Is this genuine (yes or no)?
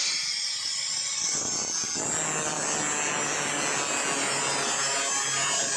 yes